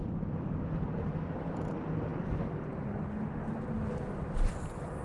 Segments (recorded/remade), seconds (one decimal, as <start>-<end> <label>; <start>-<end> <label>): 0.0-5.0 recorded